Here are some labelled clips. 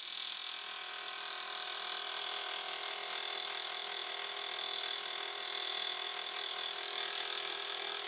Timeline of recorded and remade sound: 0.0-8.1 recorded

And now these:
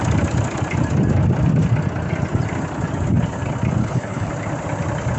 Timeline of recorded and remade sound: 0.0-3.8 recorded; 3.8-4.3 remade; 4.3-5.2 recorded

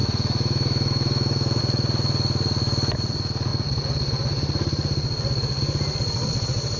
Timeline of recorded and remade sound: 0.0-1.6 remade; 1.6-6.8 recorded